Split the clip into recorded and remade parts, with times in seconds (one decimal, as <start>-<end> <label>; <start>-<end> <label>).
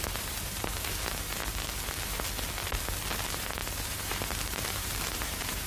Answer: 0.0-1.4 remade; 1.4-3.3 recorded; 3.3-5.7 remade